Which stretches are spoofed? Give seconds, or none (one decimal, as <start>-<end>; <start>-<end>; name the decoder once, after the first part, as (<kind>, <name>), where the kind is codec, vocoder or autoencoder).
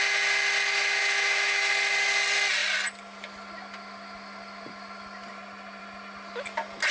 1.0-1.7 (autoencoder, DAC-VAE)